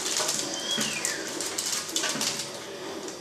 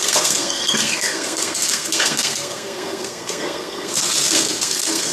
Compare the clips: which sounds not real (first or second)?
second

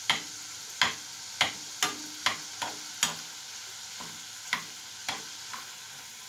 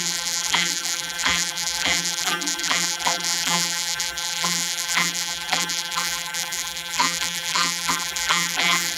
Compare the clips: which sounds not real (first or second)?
second